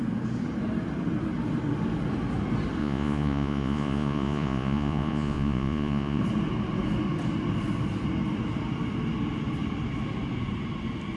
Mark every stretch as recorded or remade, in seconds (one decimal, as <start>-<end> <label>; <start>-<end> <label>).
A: 0.0-2.8 recorded; 2.8-6.2 remade; 6.2-11.2 recorded